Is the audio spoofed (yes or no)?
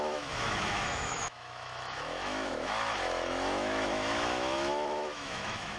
yes